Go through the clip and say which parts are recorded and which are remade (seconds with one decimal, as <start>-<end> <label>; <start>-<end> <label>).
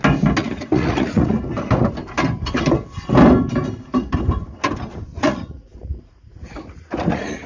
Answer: 0.0-0.4 recorded; 0.4-1.4 remade; 1.4-5.1 recorded; 5.1-7.5 remade